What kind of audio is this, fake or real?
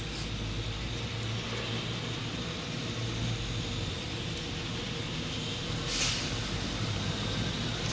real